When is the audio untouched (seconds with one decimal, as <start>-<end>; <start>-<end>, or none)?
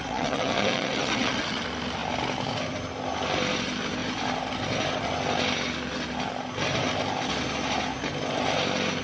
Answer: 1.6-9.0